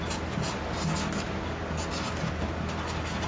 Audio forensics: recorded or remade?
recorded